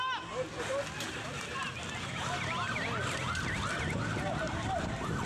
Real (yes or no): yes